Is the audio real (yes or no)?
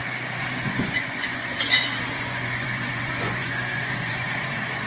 no